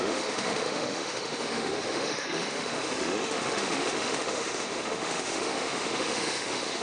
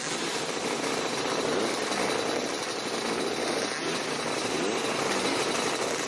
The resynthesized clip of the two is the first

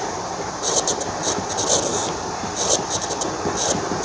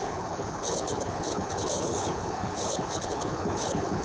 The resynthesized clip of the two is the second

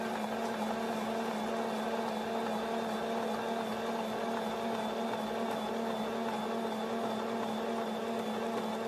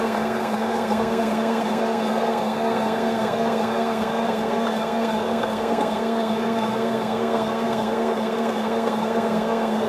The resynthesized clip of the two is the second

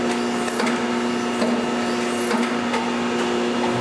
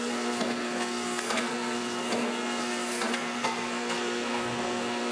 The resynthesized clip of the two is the second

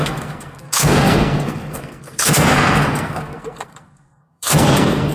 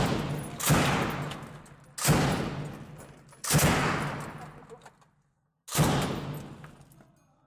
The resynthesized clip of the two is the first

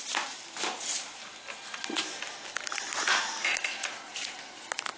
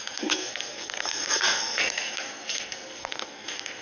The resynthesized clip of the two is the second